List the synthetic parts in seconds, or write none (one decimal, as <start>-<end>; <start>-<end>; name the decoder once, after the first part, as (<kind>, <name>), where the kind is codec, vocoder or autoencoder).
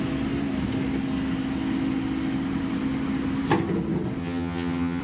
4.2-5.0 (vocoder, HiFi-GAN)